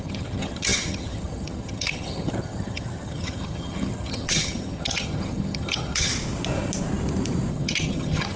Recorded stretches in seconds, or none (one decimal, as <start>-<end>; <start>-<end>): 6.1-7.5